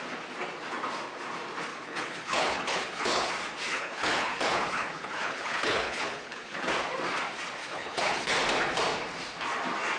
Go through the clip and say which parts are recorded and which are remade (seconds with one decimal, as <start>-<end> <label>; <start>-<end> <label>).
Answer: 0.0-1.7 recorded; 1.7-3.3 remade; 3.3-3.7 recorded; 3.7-6.7 remade; 6.7-7.6 recorded; 7.6-8.3 remade; 8.3-10.0 recorded